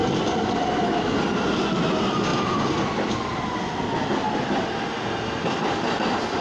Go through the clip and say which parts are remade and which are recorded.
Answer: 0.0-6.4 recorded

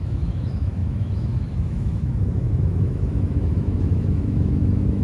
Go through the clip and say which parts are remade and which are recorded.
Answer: 0.0-5.0 remade

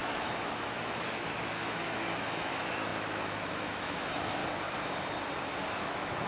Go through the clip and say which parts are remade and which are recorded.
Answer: 0.0-4.4 remade; 4.4-5.6 recorded; 5.6-6.3 remade

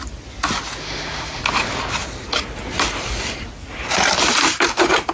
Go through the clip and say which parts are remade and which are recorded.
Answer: 0.0-0.8 recorded; 0.8-1.4 remade; 1.4-5.1 recorded

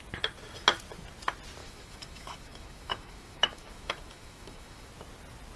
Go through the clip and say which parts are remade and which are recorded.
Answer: 0.0-1.6 recorded; 1.6-4.9 remade; 4.9-5.6 recorded

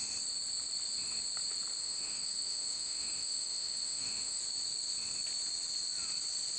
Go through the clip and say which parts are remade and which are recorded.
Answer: 0.0-1.8 recorded; 1.8-4.4 remade; 4.4-6.6 recorded